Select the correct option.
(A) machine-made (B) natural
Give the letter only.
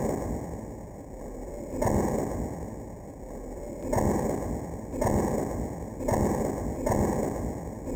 B